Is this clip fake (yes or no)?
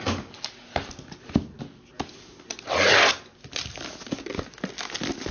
no